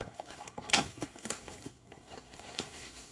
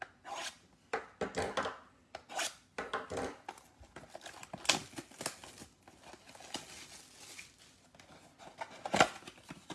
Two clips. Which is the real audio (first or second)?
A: second